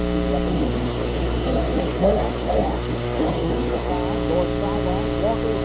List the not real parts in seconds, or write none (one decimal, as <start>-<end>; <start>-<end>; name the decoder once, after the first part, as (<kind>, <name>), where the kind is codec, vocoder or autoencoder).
0.5-3.9 (codec, SNAC)